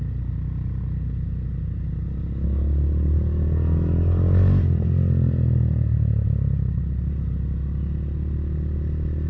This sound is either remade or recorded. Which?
recorded